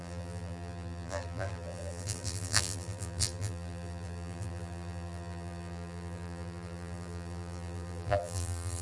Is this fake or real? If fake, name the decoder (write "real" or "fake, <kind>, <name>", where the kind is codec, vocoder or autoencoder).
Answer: fake, vocoder, BigVGAN v2